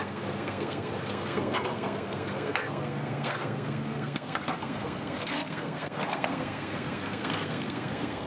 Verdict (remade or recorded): remade